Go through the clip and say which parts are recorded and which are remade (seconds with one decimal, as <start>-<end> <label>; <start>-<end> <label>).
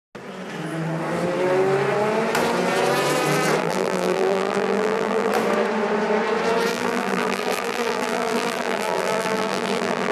0.0-3.6 recorded; 3.6-5.3 remade; 5.3-6.7 recorded; 6.7-10.1 remade